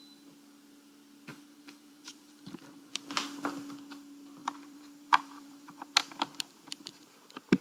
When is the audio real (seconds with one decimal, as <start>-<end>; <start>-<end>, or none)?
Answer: 0.0-1.3; 2.9-4.4; 5.9-7.6